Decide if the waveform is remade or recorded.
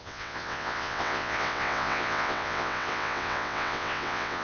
remade